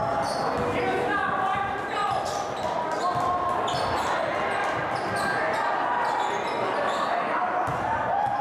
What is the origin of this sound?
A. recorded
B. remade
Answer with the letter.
A